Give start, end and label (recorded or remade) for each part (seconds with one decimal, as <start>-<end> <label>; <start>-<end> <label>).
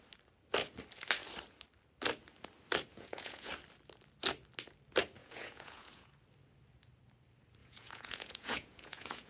0.0-2.9 recorded; 2.9-3.5 remade; 3.5-5.2 recorded; 5.2-6.1 remade; 6.1-7.6 recorded; 7.6-9.3 remade